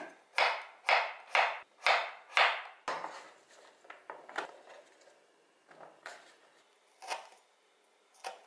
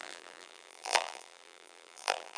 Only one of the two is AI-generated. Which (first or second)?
second